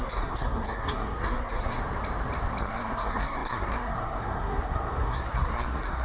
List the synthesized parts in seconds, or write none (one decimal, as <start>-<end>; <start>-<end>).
0.0-1.8; 2.6-6.0